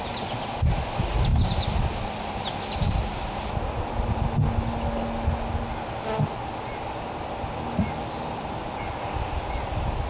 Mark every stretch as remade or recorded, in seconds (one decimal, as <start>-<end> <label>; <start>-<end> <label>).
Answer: 0.0-10.1 recorded